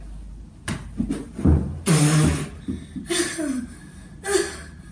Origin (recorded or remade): recorded